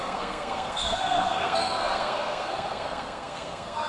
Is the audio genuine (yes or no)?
no